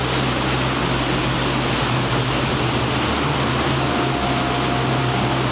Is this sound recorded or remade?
recorded